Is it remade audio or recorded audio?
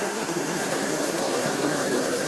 remade